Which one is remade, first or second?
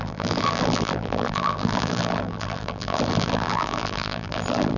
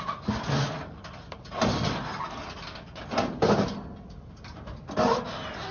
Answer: first